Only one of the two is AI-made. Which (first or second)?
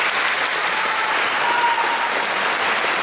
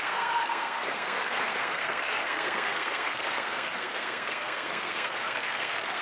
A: second